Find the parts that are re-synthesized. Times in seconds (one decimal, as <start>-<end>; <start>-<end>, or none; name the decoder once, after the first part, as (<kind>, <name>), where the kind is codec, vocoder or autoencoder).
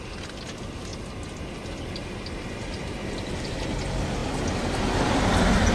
none